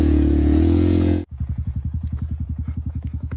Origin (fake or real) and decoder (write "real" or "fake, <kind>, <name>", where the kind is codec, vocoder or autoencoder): fake, vocoder, Vocos